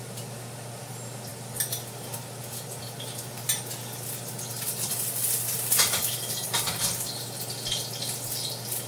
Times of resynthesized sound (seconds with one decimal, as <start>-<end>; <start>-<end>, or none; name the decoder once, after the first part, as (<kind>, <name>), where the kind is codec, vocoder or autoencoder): none

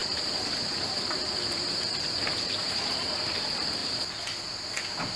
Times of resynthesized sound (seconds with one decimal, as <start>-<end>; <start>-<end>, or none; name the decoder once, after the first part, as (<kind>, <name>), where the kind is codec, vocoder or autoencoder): 0.0-2.9 (vocoder, BigVGAN v2)